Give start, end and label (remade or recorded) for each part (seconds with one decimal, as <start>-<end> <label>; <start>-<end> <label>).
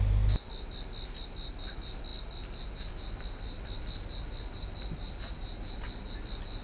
0.0-6.6 recorded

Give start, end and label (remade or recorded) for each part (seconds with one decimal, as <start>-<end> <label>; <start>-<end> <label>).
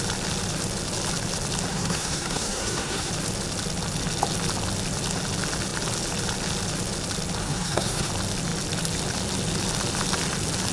0.0-1.7 recorded; 1.7-3.1 remade; 3.1-7.4 recorded; 7.4-8.1 remade; 8.1-10.7 recorded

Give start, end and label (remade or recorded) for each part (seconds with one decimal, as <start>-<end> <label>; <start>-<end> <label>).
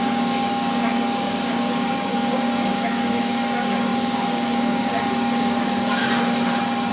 0.0-6.0 remade; 6.0-6.9 recorded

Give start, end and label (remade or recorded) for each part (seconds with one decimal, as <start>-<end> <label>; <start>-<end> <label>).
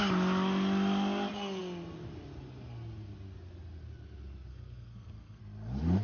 0.0-4.5 recorded; 4.5-5.4 remade; 5.4-6.0 recorded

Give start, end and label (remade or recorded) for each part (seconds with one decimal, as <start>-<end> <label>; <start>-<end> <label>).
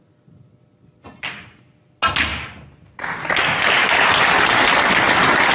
0.0-5.5 recorded